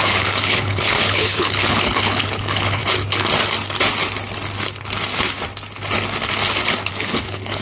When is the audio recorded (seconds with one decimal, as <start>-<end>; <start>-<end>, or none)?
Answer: 2.8-6.9